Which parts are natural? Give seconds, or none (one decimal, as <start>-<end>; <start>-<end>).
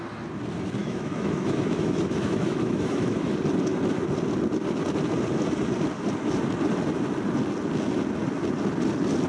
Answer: 0.0-0.8; 3.3-9.3